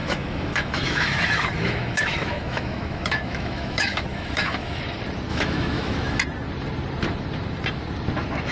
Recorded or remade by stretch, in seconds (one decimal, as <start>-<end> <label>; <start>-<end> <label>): 0.0-4.8 remade; 4.8-5.3 recorded; 5.3-6.2 remade; 6.2-8.5 recorded